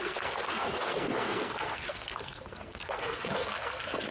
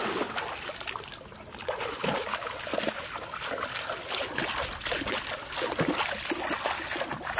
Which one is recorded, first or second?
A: second